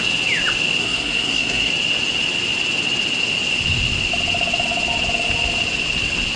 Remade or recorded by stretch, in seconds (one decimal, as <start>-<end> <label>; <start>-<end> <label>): 0.0-0.8 recorded; 0.8-1.7 remade; 1.7-6.4 recorded